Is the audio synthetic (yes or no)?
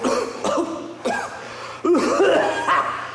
no